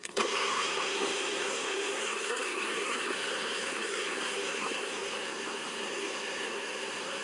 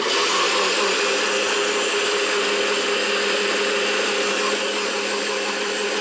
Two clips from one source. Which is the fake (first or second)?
first